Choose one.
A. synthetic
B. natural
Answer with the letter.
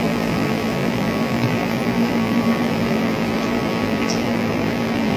A